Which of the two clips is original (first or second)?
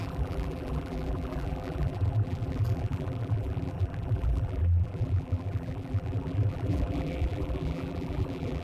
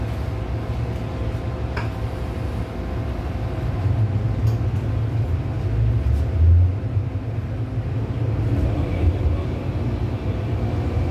second